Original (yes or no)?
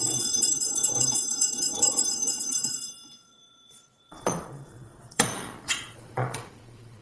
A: no